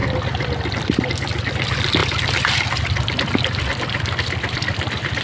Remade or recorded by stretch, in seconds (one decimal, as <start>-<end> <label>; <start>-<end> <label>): 0.0-1.1 remade; 1.1-2.0 recorded; 2.0-5.2 remade